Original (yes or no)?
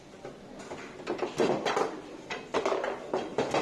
yes